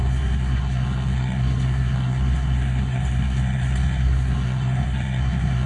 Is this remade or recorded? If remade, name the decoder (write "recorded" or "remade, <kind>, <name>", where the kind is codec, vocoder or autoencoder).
remade, codec, SNAC